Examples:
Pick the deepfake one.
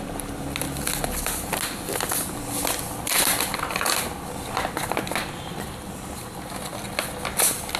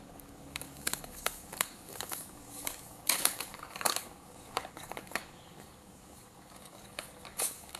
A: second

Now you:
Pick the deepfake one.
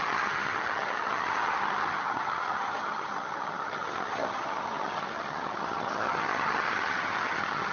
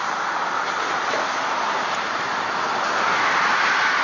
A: first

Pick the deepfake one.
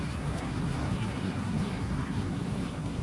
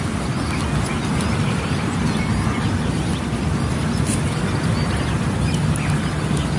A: first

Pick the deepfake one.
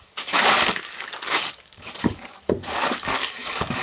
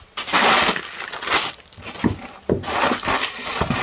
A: first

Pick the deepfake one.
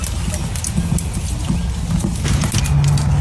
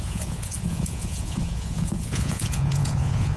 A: second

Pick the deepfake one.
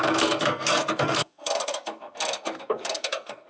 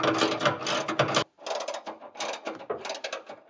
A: first